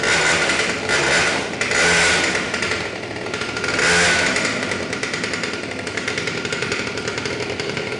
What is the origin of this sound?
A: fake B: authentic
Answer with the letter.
B